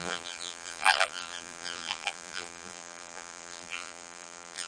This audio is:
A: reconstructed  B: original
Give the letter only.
A